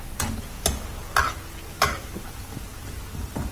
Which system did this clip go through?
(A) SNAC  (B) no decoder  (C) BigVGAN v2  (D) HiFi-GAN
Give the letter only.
B